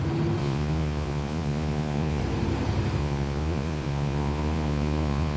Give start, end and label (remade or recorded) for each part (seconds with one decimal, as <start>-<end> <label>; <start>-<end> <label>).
0.0-0.4 recorded; 0.4-2.2 remade; 2.2-3.0 recorded; 3.0-5.4 remade